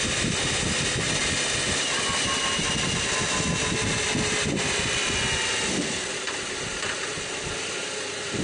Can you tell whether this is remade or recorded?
recorded